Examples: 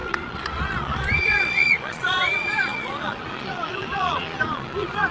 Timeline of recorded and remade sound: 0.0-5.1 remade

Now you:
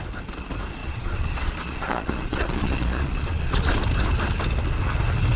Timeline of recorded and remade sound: 0.0-0.8 recorded; 0.8-3.7 remade; 3.7-5.4 recorded

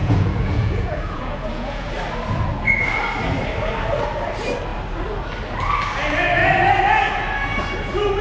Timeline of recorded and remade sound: 0.0-1.9 remade; 1.9-8.2 recorded

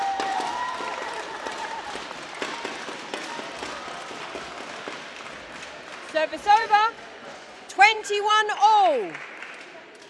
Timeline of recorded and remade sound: 0.0-6.3 recorded; 6.3-8.3 remade; 8.3-10.1 recorded

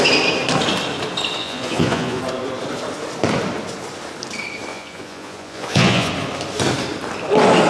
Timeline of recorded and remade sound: 0.0-1.4 recorded; 1.4-2.2 remade; 2.2-4.7 recorded; 4.7-6.1 remade; 6.1-7.7 recorded

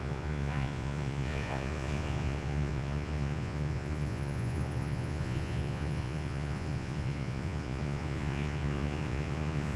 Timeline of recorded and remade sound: 0.0-9.8 remade

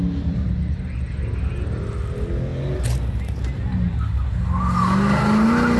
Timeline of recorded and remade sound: 0.0-5.8 recorded

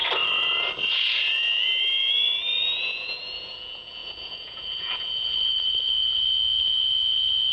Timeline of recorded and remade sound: 0.0-0.9 recorded; 0.9-7.5 remade